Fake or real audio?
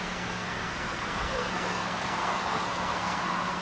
fake